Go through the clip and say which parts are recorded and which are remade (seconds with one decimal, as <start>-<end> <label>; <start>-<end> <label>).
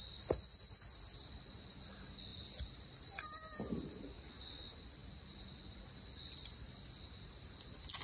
0.0-8.0 recorded